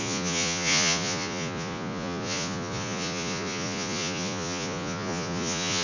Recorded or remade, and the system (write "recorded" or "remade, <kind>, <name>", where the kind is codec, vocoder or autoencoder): remade, vocoder, Vocos